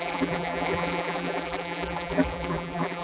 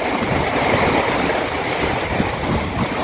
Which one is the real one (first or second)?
second